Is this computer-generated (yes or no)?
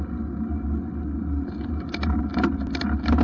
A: no